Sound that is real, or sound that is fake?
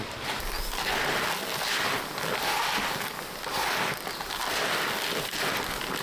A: real